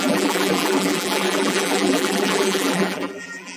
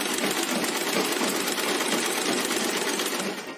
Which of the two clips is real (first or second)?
second